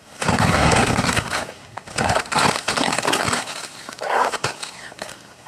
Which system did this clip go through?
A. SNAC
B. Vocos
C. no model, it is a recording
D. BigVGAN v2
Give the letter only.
A